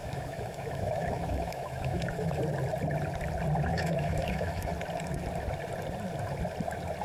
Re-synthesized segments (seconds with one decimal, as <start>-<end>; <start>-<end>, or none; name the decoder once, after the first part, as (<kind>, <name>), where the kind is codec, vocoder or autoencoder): 0.0-2.4 (autoencoder, DAC-VAE); 3.7-4.7